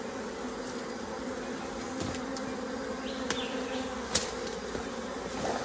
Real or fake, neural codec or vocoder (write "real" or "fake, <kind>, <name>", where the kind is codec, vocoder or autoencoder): real